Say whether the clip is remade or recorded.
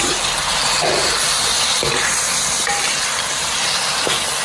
recorded